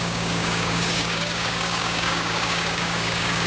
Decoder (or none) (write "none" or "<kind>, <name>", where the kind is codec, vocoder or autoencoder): codec, DAC